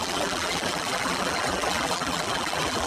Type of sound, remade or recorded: remade